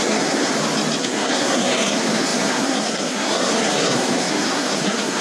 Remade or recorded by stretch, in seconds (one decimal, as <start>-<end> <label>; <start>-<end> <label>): 0.0-0.5 remade; 0.5-1.0 recorded; 1.0-5.2 remade

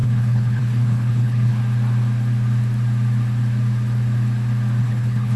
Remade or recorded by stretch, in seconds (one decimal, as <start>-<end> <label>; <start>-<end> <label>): 0.0-1.6 remade; 1.6-4.8 recorded; 4.8-5.4 remade

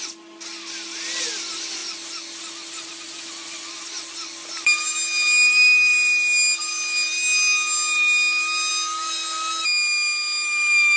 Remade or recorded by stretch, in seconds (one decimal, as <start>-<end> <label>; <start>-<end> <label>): 0.0-11.0 recorded

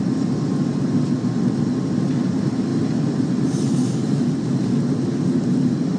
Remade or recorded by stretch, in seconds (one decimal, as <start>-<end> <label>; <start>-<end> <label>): 0.0-6.0 recorded

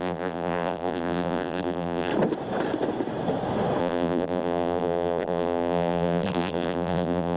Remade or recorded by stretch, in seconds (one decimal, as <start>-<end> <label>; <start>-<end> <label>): 0.0-2.1 remade; 2.1-3.8 recorded; 3.8-7.4 remade

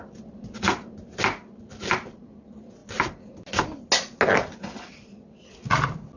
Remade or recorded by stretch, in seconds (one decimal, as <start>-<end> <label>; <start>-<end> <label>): 0.0-6.2 recorded